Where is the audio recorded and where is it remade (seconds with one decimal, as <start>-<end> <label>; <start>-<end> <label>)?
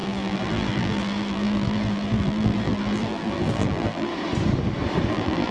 0.0-4.1 remade; 4.1-5.1 recorded; 5.1-5.5 remade